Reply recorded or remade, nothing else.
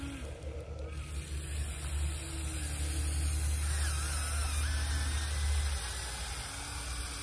recorded